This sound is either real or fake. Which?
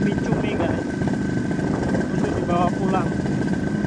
real